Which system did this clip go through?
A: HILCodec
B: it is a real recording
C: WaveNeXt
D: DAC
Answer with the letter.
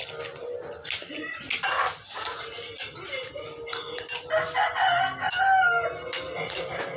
B